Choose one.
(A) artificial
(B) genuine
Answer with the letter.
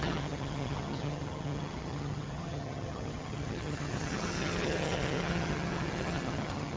A